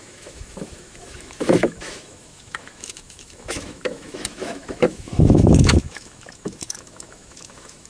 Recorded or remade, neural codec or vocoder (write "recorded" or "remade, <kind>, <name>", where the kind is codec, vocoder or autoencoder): remade, autoencoder, DAC-VAE